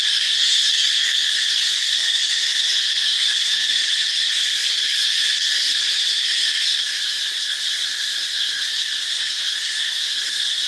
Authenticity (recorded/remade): remade